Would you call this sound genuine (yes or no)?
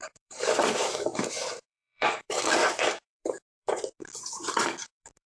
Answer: no